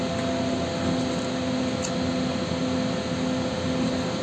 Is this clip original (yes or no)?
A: yes